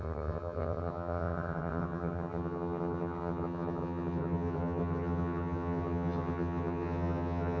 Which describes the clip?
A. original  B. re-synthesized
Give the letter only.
B